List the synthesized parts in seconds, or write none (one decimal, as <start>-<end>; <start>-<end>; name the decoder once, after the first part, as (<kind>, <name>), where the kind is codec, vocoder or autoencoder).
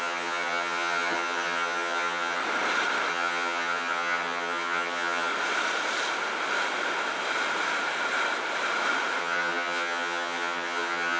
0.0-2.4 (vocoder, HiFi-GAN); 3.1-5.3; 9.2-11.2